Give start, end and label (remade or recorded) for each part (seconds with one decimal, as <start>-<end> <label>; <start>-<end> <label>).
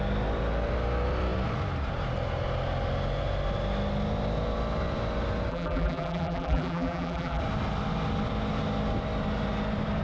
0.0-5.5 recorded; 5.5-7.4 remade; 7.4-10.0 recorded